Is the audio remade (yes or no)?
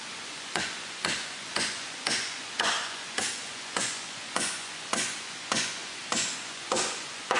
yes